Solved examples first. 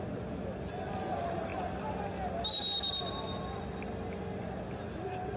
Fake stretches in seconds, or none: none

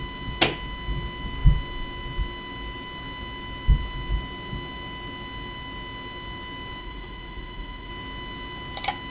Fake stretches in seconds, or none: 6.8-7.9

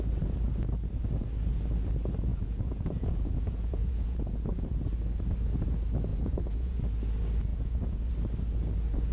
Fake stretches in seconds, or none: 2.3-4.6; 6.1-6.8; 7.5-8.1

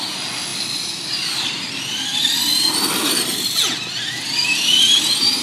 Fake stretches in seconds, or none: none